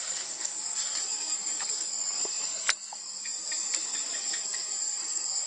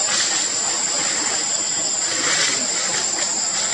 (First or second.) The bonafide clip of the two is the second